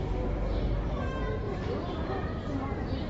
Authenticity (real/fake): real